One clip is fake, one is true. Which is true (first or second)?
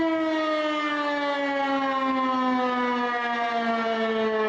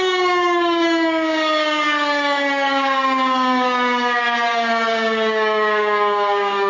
first